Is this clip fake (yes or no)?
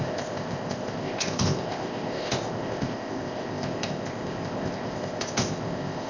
yes